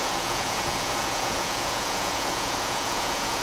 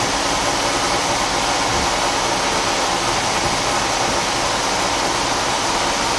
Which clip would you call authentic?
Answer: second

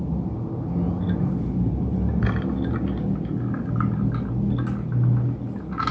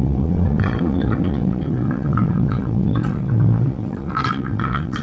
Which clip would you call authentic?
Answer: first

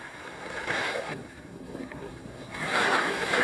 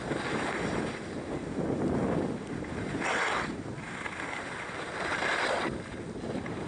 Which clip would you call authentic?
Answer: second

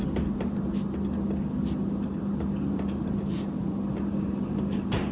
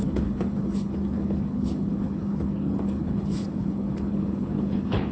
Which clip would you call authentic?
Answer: first